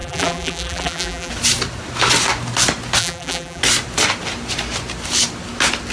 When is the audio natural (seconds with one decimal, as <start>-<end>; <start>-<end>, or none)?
1.3-3.0; 3.6-5.9